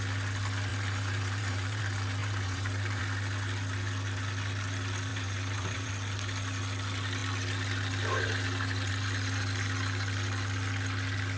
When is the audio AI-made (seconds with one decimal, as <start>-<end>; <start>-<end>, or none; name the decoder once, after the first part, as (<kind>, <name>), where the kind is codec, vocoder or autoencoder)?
0.7-1.8 (vocoder, BigVGAN v2); 2.2-3.0; 5.1-5.9